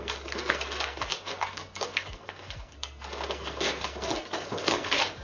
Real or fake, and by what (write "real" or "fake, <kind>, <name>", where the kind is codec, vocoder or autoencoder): fake, codec, SNAC